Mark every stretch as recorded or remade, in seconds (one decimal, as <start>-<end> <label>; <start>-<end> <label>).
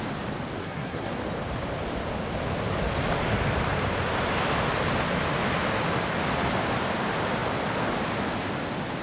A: 0.0-0.6 recorded; 0.6-1.1 remade; 1.1-9.0 recorded